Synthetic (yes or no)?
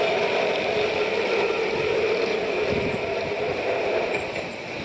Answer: no